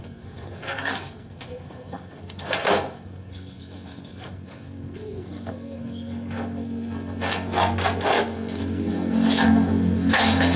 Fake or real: fake